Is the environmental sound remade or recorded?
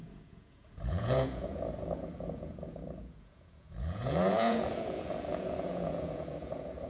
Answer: remade